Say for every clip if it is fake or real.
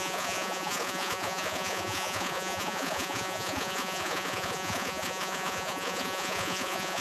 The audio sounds fake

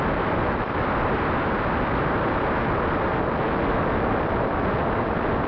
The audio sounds real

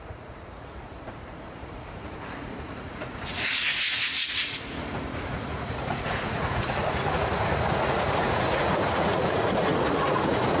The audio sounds fake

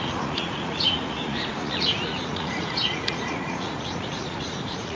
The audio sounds fake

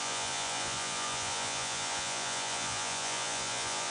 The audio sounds fake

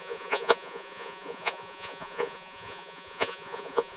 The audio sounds fake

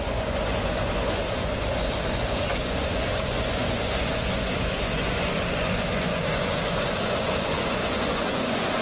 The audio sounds fake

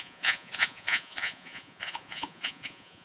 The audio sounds fake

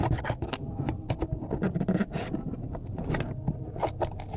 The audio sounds real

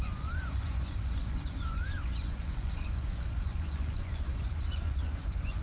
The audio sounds fake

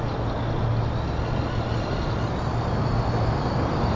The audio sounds real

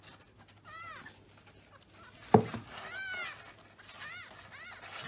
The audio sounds real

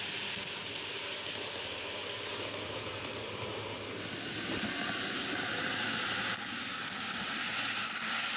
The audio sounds real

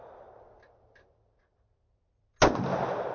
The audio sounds real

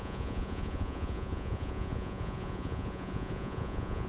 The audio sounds fake